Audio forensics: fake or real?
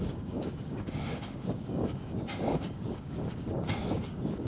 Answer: fake